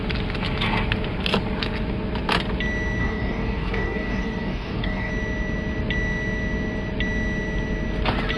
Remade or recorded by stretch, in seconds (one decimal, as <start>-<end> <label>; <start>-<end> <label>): 0.0-3.0 recorded; 3.0-5.1 remade; 5.1-8.4 recorded